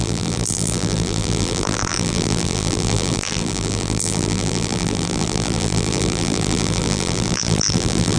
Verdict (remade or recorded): remade